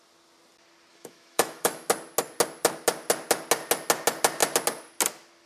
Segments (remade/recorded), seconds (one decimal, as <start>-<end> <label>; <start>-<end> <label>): 0.0-0.9 recorded; 0.9-1.9 remade; 1.9-5.5 recorded